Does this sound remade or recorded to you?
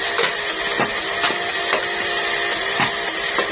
recorded